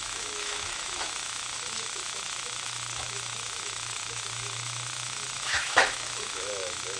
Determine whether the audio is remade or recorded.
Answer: remade